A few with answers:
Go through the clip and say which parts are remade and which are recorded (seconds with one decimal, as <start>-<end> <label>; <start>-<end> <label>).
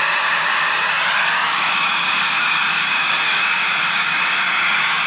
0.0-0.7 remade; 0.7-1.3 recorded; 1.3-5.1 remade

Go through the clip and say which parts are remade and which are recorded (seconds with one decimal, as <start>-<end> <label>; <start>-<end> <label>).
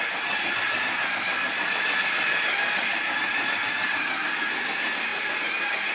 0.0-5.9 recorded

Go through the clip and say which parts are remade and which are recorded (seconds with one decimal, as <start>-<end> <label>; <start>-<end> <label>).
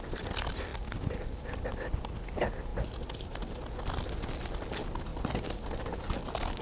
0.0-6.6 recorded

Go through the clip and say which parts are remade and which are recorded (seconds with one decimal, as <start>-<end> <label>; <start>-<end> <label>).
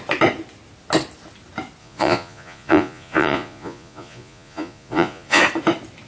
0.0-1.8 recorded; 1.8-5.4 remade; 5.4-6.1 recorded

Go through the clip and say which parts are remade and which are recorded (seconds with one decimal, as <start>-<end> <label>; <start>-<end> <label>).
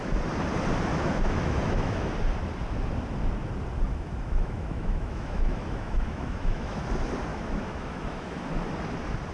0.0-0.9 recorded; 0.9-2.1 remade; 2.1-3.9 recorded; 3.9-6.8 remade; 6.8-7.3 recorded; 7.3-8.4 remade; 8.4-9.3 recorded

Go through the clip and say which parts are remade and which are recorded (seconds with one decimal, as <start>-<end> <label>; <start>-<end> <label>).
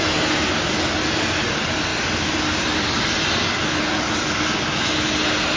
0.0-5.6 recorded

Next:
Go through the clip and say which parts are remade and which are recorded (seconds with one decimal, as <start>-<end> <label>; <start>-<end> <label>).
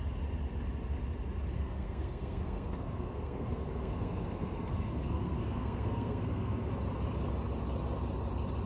0.0-1.5 recorded; 1.5-6.7 remade; 6.7-8.7 recorded